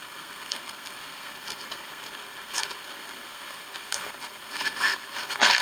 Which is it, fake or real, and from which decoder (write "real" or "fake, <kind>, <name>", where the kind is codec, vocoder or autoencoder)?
fake, codec, SNAC